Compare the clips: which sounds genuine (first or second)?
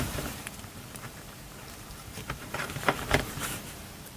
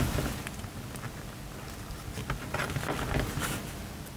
second